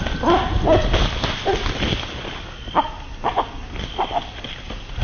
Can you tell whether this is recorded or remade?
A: recorded